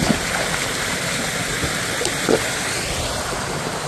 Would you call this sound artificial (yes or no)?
no